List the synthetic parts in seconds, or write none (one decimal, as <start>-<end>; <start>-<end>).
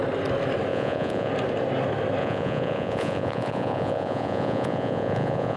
0.7-1.3; 2.2-5.6